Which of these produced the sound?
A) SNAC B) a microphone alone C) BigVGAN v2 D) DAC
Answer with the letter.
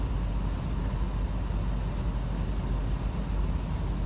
B